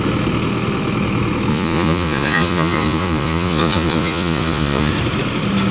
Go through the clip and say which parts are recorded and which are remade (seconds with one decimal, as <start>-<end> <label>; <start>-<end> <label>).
0.0-1.5 recorded; 1.5-4.9 remade; 4.9-5.7 recorded